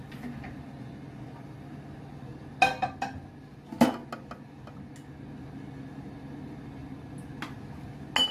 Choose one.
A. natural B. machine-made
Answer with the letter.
A